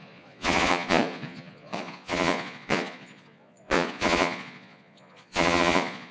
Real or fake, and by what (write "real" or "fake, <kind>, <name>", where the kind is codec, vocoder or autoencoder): fake, vocoder, Vocos